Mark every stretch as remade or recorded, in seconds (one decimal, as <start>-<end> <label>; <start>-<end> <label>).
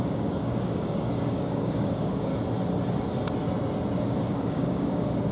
0.0-2.3 remade; 2.3-4.3 recorded; 4.3-5.3 remade